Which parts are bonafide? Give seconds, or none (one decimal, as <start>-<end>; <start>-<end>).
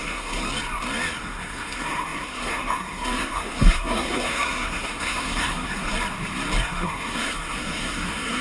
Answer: 0.4-1.2; 5.9-6.6